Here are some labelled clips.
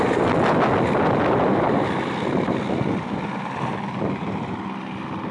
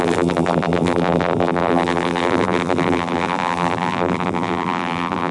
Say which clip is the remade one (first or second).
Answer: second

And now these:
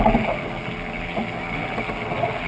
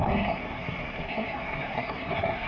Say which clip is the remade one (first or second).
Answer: second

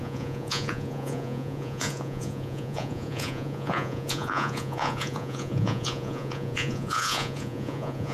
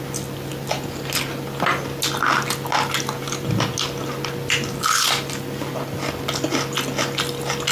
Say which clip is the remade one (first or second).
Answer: first